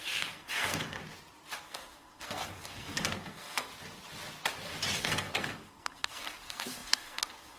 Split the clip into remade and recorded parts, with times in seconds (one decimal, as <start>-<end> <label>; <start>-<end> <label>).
0.0-1.0 remade; 1.0-1.6 recorded; 1.6-3.7 remade; 3.7-5.0 recorded; 5.0-7.6 remade